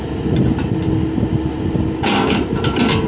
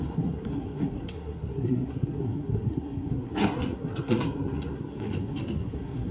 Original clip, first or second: first